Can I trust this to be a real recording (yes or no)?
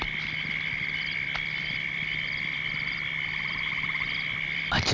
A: no